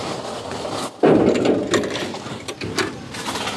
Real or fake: real